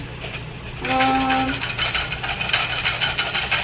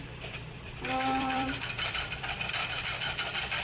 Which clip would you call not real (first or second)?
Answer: second